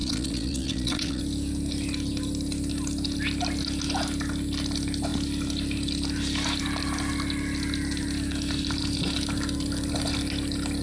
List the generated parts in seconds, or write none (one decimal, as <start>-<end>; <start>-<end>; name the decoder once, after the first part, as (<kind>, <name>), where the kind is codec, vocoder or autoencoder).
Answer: 0.0-1.2 (vocoder, Vocos)